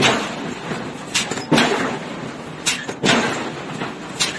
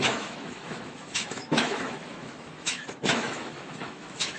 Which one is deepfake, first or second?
second